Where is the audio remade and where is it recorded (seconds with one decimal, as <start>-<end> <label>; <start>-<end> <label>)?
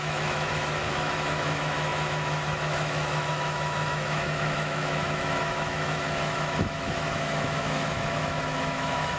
0.0-9.2 remade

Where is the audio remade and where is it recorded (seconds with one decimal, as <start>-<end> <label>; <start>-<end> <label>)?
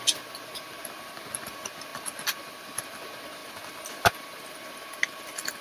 0.0-5.6 recorded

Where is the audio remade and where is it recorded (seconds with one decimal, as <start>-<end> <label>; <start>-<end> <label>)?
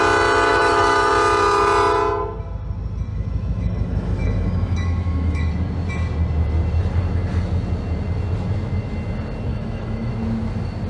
0.0-0.5 recorded; 0.5-1.1 remade; 1.1-3.1 recorded; 3.1-5.5 remade; 5.5-9.5 recorded; 9.5-10.1 remade; 10.1-10.9 recorded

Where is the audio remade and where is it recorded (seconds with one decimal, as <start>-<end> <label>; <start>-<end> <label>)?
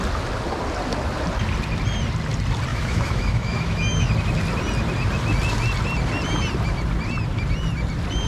0.0-2.7 recorded; 2.7-4.1 remade; 4.1-8.3 recorded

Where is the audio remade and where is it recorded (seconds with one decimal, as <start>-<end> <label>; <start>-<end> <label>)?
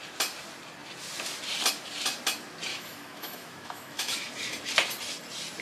0.0-2.7 recorded; 2.7-4.3 remade; 4.3-5.6 recorded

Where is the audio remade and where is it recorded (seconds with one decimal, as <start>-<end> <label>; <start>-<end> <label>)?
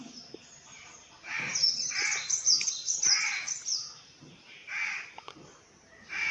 0.0-6.3 recorded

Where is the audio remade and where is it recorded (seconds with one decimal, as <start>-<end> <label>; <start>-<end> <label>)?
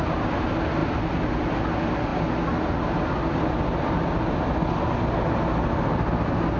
0.0-6.6 recorded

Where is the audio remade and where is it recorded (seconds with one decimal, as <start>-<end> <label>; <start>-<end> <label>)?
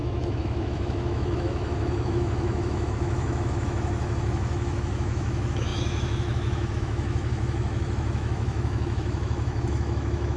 0.0-10.4 remade